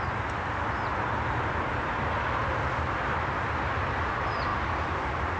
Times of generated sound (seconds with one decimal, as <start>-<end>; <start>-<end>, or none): none